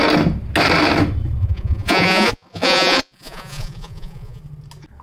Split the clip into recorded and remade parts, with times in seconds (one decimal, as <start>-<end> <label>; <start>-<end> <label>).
0.0-1.4 recorded; 1.4-4.4 remade; 4.4-5.0 recorded